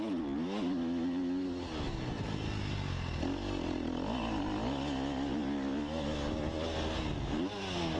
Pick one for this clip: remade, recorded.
recorded